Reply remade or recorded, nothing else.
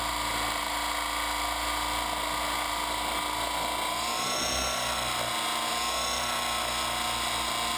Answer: recorded